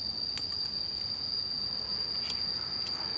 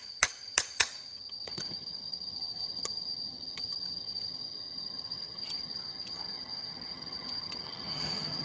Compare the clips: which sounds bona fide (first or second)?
first